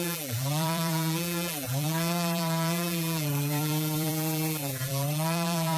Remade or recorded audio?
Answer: remade